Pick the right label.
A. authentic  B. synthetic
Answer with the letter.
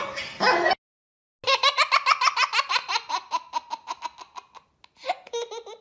A